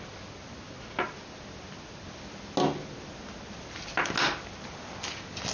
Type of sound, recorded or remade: recorded